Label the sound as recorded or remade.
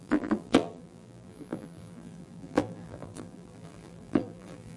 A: remade